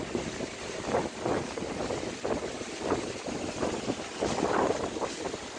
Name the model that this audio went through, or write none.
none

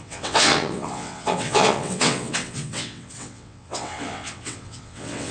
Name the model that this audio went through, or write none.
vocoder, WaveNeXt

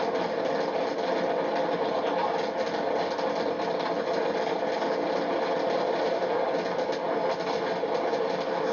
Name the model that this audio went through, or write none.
none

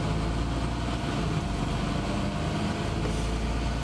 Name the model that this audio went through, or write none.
none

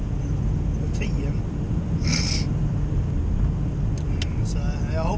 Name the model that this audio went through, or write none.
none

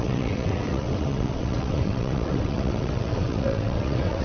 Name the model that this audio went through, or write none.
vocoder, WaveNeXt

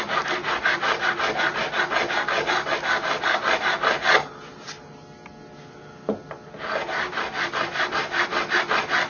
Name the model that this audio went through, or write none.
none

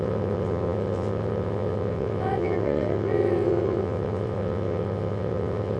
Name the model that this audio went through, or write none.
vocoder, WaveNeXt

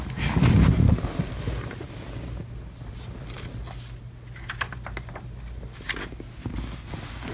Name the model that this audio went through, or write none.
none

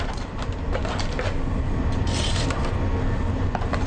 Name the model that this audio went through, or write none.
none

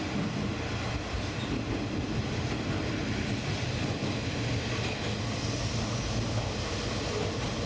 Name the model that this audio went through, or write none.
none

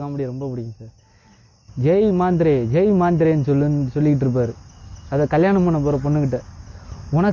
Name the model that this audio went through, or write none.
none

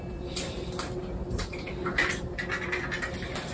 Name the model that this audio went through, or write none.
none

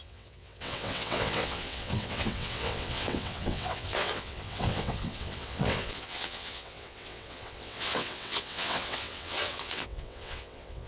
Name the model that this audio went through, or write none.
vocoder, WaveNeXt